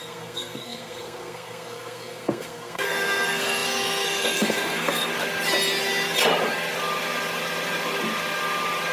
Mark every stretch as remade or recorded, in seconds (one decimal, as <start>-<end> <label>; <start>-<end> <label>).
0.0-5.1 remade; 5.1-8.9 recorded